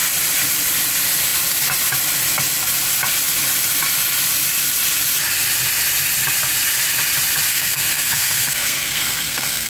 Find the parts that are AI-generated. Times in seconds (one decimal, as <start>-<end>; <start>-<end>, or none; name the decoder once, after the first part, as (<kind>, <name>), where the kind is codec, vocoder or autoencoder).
7.5-9.7 (codec, SNAC)